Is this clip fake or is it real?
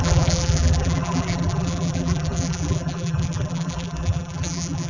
fake